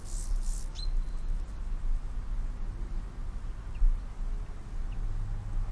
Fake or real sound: real